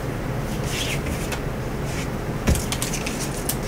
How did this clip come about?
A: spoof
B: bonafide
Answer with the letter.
B